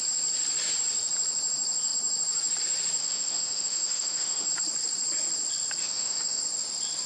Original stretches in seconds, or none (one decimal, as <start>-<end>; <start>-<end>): 0.0-3.0; 4.5-5.8; 6.4-7.1